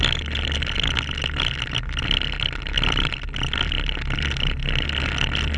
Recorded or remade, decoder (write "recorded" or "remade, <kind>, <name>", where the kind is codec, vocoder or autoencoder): recorded